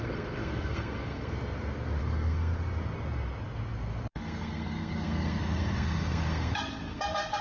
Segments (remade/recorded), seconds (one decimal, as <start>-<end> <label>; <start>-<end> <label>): 0.0-1.3 remade; 1.3-2.0 recorded; 2.0-2.5 remade; 2.5-4.1 recorded; 4.1-7.4 remade